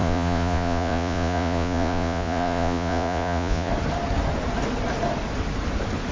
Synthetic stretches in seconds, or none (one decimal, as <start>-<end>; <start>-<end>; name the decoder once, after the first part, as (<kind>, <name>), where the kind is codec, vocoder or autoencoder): 0.0-3.7 (vocoder, Vocos)